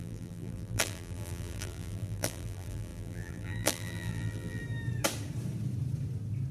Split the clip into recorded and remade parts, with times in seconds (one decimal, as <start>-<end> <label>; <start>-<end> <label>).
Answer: 0.0-4.6 remade; 4.6-6.5 recorded